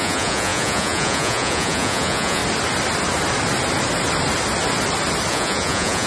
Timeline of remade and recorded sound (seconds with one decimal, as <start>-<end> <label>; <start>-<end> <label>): 0.0-2.4 remade; 2.4-5.3 recorded; 5.3-6.1 remade